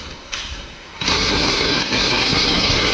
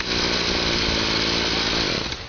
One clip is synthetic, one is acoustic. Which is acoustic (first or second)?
second